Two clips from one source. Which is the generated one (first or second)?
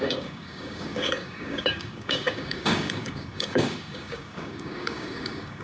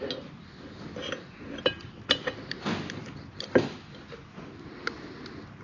first